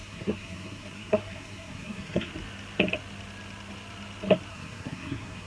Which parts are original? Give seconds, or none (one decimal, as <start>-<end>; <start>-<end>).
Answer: 2.3-4.5